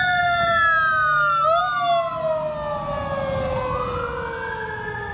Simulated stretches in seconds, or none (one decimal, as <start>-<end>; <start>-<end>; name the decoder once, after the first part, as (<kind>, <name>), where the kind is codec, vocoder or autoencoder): none